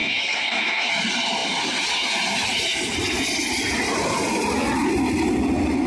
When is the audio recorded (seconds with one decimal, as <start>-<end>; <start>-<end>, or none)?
0.9-5.9